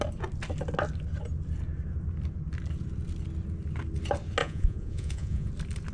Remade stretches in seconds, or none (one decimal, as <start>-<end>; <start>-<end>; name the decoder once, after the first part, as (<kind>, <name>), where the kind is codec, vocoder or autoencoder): 4.4-5.5 (vocoder, Vocos)